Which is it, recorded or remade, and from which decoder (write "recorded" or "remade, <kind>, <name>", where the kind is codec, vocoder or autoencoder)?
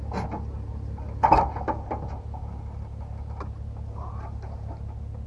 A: recorded